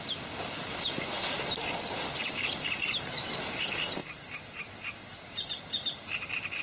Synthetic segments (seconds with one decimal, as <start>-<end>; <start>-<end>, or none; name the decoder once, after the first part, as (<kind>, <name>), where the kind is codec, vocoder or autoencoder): none